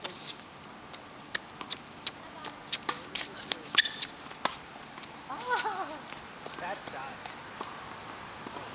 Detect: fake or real real